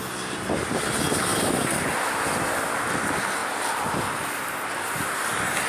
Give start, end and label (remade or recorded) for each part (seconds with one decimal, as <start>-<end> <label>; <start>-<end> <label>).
0.0-5.7 recorded